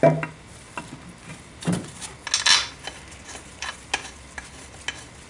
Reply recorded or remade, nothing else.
recorded